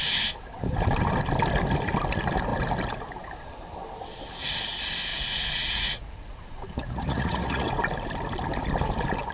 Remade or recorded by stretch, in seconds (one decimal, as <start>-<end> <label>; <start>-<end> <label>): 0.0-5.1 recorded; 5.1-7.7 remade; 7.7-9.3 recorded